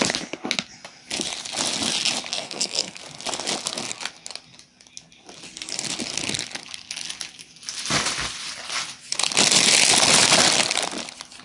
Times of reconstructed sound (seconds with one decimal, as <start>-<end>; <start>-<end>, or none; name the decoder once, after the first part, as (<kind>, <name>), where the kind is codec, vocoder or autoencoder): 2.3-3.0 (codec, SNAC)